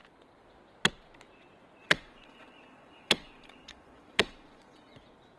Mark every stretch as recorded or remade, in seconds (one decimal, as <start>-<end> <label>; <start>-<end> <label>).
0.0-1.8 recorded; 1.8-5.0 remade; 5.0-5.4 recorded